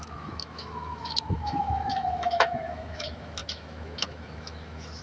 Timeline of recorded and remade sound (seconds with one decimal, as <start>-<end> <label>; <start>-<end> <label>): 0.0-5.0 remade